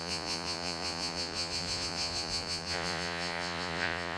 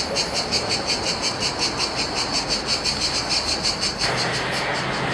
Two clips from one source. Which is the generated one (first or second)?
first